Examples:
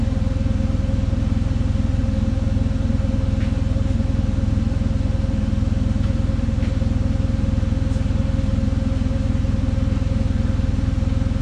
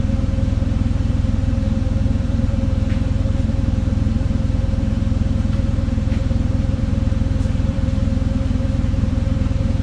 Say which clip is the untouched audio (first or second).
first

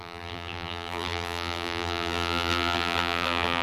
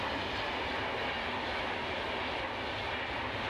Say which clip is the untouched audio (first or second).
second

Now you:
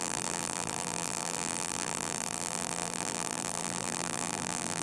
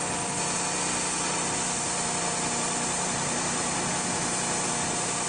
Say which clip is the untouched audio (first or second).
second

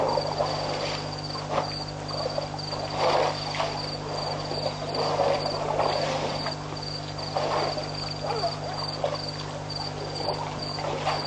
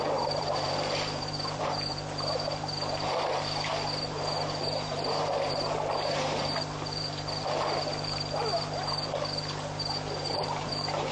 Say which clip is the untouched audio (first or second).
first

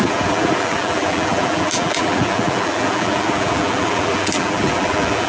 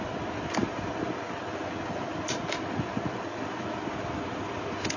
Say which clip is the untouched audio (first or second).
second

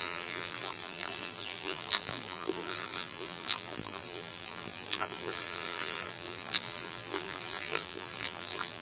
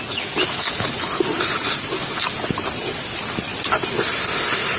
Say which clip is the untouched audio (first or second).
second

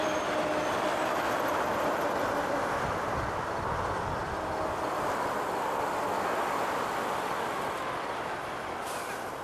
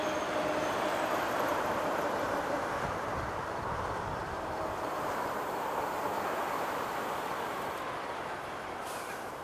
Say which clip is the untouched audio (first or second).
first